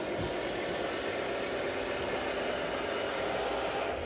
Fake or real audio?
real